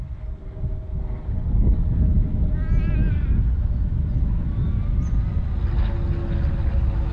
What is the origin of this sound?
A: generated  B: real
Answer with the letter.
B